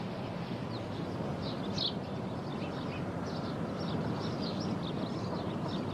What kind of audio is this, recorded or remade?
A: recorded